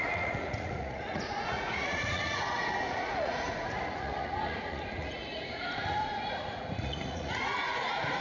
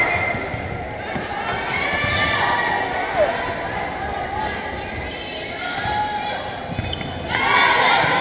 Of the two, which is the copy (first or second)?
first